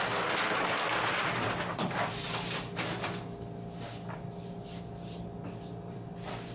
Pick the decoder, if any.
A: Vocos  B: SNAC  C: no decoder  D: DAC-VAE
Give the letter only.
C